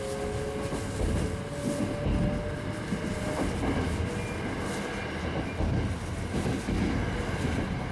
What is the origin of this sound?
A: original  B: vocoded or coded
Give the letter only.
A